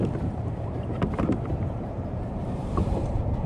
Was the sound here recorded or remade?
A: remade